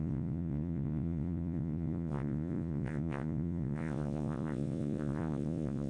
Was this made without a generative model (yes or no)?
no